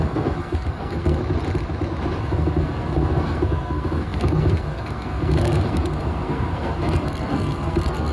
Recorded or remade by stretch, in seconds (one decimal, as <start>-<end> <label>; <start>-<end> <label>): 0.0-1.2 remade; 1.2-2.2 recorded; 2.2-8.1 remade